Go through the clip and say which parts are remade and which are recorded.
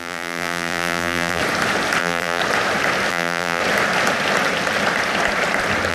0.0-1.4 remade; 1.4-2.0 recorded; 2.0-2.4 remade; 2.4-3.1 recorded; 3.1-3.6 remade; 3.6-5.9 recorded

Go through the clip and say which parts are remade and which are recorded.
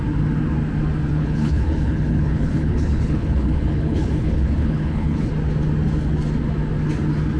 0.0-1.1 recorded; 1.1-5.3 remade; 5.3-7.4 recorded